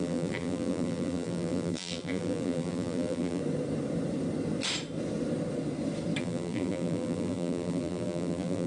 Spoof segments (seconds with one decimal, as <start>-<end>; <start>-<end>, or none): 0.0-3.4; 6.2-8.7